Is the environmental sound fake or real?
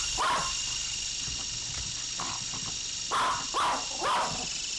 real